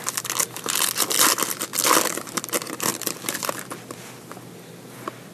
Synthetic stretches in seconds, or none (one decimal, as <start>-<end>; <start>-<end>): 2.9-3.5

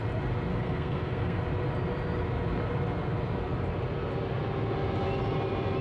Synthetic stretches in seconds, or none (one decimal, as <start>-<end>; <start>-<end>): 0.5-1.4